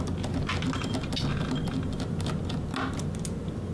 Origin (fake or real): real